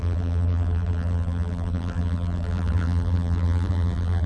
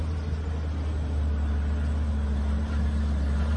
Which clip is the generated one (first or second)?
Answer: first